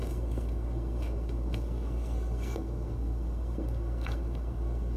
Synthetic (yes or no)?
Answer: yes